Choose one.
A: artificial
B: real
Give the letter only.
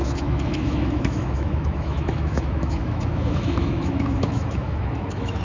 A